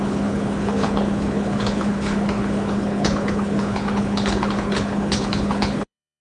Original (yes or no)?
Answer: no